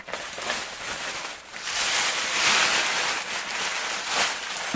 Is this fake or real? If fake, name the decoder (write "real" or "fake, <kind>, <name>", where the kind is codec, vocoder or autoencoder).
real